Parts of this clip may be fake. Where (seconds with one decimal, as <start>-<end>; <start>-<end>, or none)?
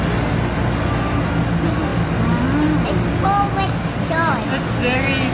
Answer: none